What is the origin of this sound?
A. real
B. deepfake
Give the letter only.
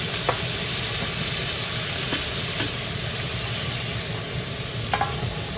A